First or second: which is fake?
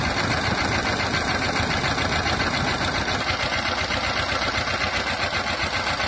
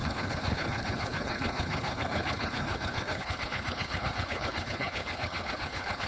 second